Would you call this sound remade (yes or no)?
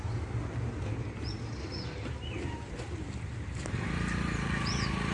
no